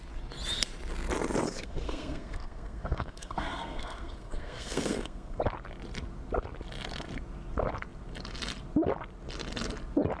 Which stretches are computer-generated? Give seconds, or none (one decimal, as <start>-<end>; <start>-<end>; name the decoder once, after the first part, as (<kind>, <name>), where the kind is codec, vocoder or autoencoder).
1.4-5.4 (codec, SNAC)